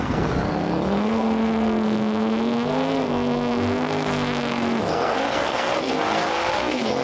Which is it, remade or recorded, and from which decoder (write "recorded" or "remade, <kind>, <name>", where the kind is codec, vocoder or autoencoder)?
remade, codec, SNAC